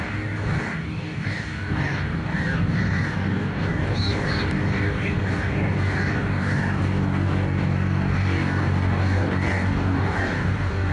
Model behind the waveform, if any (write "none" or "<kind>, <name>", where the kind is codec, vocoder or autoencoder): codec, DAC